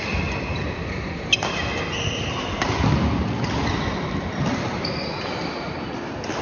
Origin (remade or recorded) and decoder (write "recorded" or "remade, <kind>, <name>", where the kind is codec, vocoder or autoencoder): recorded